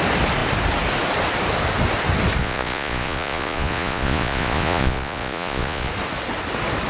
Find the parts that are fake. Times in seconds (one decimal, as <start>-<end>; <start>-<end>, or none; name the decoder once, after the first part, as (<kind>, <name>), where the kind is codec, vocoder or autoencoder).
2.4-5.9 (vocoder, Vocos)